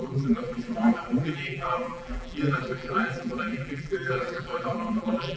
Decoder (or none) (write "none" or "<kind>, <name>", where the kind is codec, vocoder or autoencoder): vocoder, BigVGAN v2